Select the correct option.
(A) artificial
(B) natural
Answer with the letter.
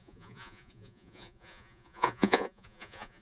A